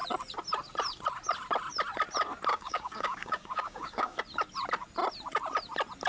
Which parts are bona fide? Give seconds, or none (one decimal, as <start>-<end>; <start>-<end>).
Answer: 0.0-2.5; 4.2-6.1